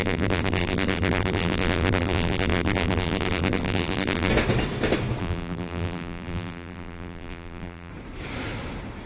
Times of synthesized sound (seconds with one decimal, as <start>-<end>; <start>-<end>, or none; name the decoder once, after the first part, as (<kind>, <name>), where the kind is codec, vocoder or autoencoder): 0.0-4.3 (vocoder, BigVGAN v2); 5.2-7.9